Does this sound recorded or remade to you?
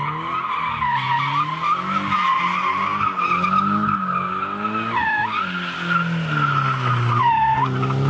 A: recorded